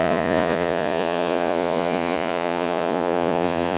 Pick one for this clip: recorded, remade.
remade